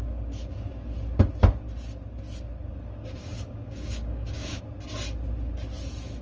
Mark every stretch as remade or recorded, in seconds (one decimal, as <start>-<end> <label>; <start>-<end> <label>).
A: 0.0-3.0 recorded; 3.0-4.6 remade; 4.6-6.2 recorded

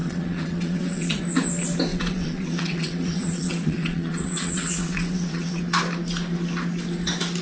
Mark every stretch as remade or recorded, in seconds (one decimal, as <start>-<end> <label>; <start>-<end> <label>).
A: 0.0-1.2 remade; 1.2-1.9 recorded; 1.9-5.6 remade; 5.6-7.4 recorded

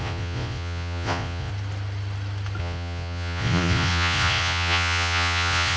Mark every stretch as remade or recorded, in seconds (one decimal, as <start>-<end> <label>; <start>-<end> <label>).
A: 0.0-1.5 remade; 1.5-2.6 recorded; 2.6-5.8 remade

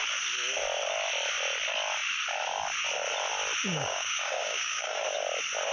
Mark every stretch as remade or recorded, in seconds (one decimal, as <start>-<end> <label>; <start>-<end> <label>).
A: 0.0-3.7 recorded; 3.7-5.0 remade; 5.0-5.7 recorded

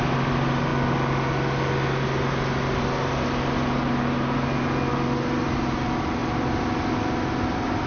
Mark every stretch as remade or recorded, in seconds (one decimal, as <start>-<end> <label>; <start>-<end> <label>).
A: 0.0-7.9 recorded

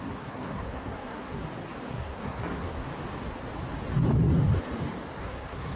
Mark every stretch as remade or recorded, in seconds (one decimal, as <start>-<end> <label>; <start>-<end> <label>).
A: 0.0-1.4 remade; 1.4-1.9 recorded; 1.9-2.9 remade; 2.9-5.2 recorded; 5.2-5.8 remade

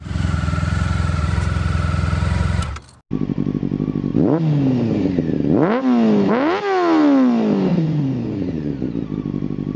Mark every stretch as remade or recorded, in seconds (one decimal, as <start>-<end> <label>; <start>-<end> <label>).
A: 0.0-7.7 recorded; 7.7-8.7 remade; 8.7-9.8 recorded